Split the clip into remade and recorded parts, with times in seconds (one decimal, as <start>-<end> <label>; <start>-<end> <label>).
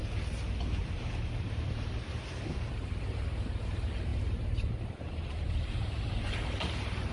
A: 0.0-0.8 recorded; 0.8-7.1 remade